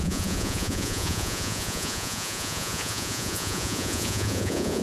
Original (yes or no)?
no